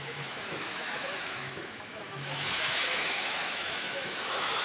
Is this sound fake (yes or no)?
yes